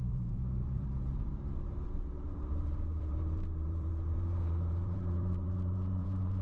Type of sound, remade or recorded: remade